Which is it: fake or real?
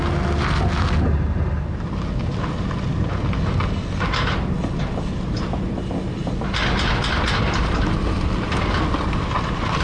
real